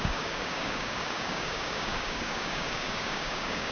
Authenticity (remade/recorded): remade